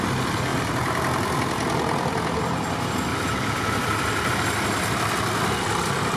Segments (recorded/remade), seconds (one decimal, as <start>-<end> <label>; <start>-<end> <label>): 0.0-0.5 recorded; 0.5-2.4 remade; 2.4-3.1 recorded; 3.1-4.3 remade; 4.3-6.2 recorded